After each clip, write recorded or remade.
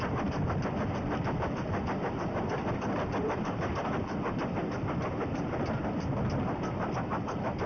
remade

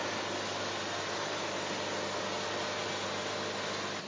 recorded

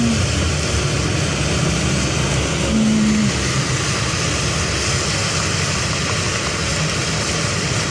recorded